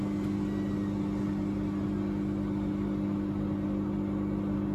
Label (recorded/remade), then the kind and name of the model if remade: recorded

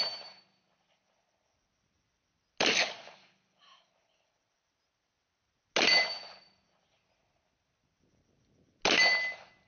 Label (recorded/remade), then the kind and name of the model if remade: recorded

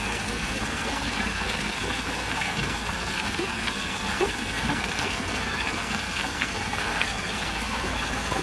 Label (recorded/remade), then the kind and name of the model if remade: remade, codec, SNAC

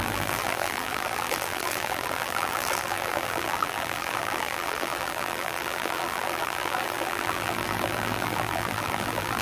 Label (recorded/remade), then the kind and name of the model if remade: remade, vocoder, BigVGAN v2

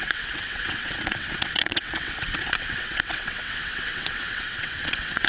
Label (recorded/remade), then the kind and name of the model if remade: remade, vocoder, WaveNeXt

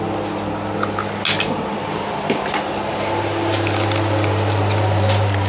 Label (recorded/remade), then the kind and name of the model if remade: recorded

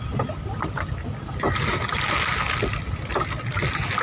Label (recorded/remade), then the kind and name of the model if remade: recorded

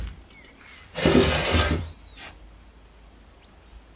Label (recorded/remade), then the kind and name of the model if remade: recorded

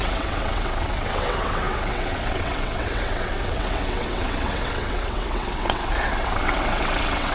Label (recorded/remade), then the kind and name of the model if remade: remade, vocoder, WaveNeXt